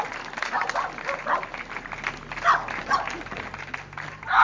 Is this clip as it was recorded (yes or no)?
yes